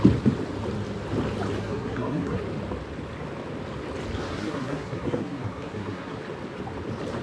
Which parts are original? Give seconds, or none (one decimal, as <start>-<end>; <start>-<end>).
0.0-1.6; 2.4-4.3; 6.2-7.2